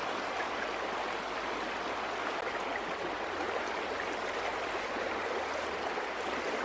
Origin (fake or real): real